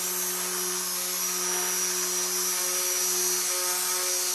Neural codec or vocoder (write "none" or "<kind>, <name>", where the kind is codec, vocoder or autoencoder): none